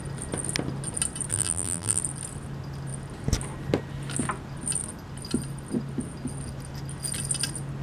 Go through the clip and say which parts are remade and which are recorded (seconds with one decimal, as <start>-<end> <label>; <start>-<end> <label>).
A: 0.0-1.3 recorded; 1.3-2.0 remade; 2.0-7.8 recorded